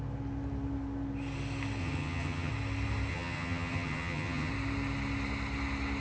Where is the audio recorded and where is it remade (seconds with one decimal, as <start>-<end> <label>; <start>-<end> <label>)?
0.0-1.8 recorded; 1.8-2.5 remade; 2.5-3.1 recorded; 3.1-4.5 remade; 4.5-6.0 recorded